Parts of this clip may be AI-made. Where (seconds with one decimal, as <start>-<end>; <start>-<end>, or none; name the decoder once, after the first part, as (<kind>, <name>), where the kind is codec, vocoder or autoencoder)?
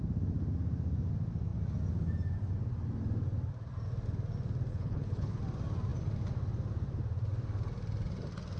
4.7-5.4 (codec, HILCodec)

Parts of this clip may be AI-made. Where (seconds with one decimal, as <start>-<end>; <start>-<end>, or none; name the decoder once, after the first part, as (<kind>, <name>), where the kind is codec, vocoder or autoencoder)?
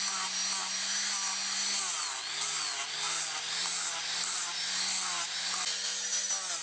none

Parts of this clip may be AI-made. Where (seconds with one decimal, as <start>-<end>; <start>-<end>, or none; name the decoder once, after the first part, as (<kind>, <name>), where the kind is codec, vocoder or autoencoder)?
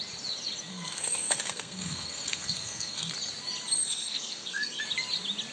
0.7-3.1 (codec, SNAC); 3.8-4.8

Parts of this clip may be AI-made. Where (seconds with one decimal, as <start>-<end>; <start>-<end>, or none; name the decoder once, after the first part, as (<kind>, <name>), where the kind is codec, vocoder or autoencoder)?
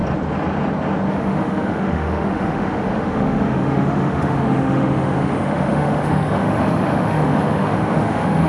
1.1-8.5 (autoencoder, DAC-VAE)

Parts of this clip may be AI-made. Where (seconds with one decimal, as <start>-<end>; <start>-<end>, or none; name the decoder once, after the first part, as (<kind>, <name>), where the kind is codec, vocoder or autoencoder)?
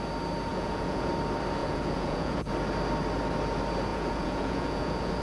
0.5-1.1 (vocoder, Vocos); 1.6-2.5; 3.9-5.2